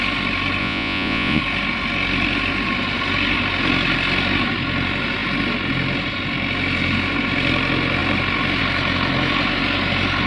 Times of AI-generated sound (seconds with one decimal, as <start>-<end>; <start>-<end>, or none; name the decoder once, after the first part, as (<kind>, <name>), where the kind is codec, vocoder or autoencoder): 0.6-1.4 (vocoder, Vocos)